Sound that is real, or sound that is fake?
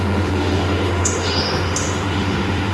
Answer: fake